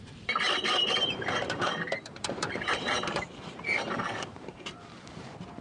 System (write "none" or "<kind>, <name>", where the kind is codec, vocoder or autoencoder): vocoder, BigVGAN v2